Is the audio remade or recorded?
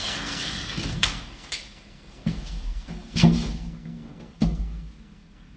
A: remade